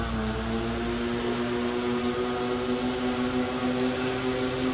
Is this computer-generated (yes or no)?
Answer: no